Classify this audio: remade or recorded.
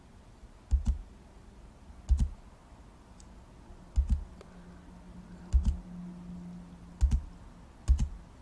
recorded